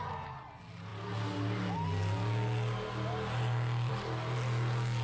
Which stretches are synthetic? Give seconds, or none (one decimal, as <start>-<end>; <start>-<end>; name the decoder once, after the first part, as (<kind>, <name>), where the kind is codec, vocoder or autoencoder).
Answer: none